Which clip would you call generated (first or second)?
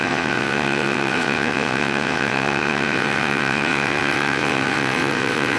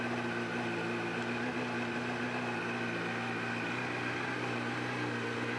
first